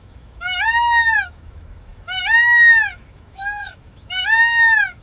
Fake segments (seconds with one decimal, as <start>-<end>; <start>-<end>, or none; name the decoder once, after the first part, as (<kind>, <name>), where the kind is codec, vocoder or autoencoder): 0.0-5.0 (autoencoder, DAC-VAE)